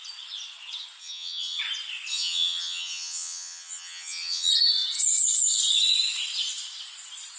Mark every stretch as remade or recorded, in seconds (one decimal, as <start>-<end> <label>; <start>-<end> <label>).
0.0-1.0 recorded; 1.0-1.6 remade; 1.6-2.1 recorded; 2.1-4.5 remade; 4.5-7.4 recorded